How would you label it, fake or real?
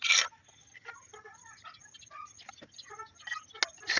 real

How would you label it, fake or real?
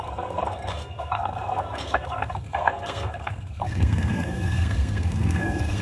fake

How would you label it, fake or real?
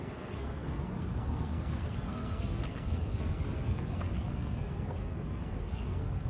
fake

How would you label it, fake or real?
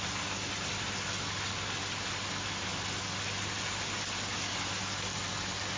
real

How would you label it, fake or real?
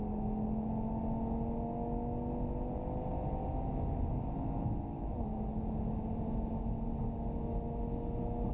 real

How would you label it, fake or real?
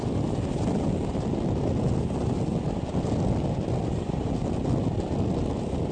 real